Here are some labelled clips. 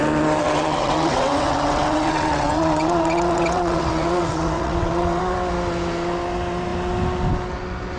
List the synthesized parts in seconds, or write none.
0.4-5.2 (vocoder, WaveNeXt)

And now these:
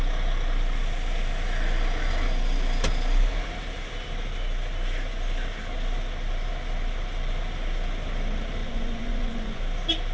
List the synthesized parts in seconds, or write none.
8.6-9.6 (vocoder, Vocos)

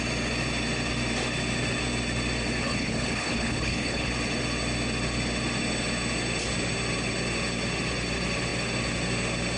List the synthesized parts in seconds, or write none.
2.6-4.1 (codec, HILCodec)

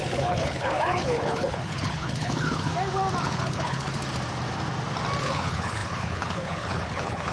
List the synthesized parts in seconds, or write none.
0.0-2.7 (codec, HILCodec); 3.2-4.0; 5.2-7.3

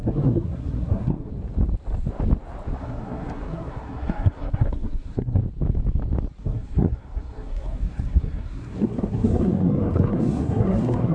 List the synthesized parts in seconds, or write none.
0.0-1.3 (codec, SNAC); 2.8-5.4; 6.4-11.1

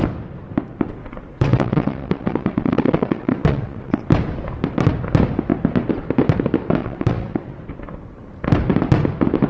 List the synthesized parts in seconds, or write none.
1.0-4.1 (vocoder, WaveNeXt); 6.8-7.6

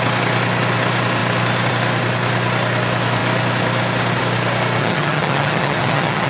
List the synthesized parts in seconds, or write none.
4.8-6.3 (vocoder, HiFi-GAN)